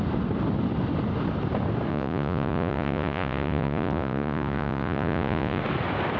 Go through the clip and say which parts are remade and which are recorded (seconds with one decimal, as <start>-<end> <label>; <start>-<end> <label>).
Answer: 0.0-1.9 recorded; 1.9-5.6 remade; 5.6-6.2 recorded